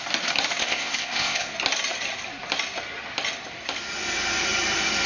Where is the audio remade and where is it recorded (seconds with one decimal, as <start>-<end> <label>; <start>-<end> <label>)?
0.0-0.6 recorded; 0.6-1.5 remade; 1.5-5.1 recorded